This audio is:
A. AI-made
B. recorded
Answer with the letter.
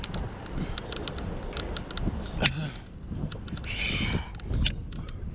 B